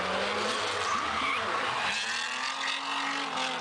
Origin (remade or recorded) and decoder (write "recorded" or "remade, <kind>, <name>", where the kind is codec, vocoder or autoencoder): recorded